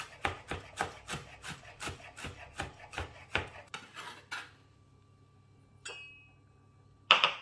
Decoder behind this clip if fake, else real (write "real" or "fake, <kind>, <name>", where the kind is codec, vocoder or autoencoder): real